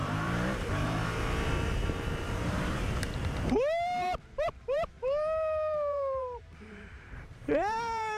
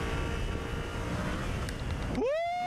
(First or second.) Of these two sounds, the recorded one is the second